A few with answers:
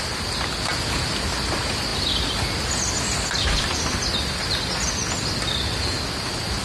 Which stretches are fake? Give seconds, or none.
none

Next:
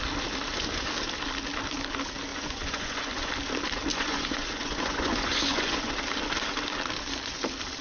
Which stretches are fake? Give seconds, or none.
2.3-3.3 (vocoder, Vocos); 3.9-5.9

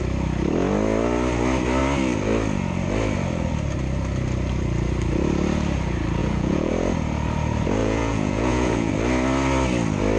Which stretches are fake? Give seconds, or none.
6.2-6.7 (vocoder, Vocos); 7.8-8.9

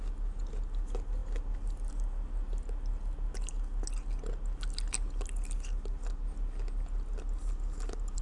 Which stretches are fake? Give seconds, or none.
none

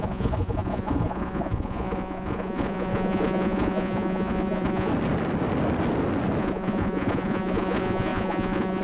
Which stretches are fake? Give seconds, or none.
0.0-4.9 (vocoder, Vocos); 6.4-8.8